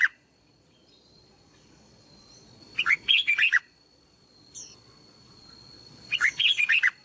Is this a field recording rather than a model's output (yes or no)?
no